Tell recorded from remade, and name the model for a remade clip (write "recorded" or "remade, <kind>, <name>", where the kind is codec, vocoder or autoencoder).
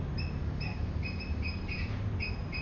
recorded